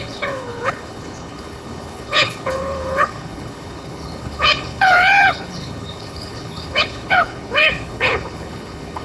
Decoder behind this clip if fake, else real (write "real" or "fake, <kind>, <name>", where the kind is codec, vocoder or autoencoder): fake, codec, HILCodec